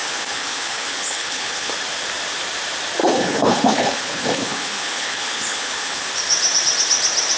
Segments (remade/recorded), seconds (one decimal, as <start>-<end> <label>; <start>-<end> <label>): 0.0-1.7 remade; 1.7-3.0 recorded; 3.0-6.1 remade; 6.1-7.4 recorded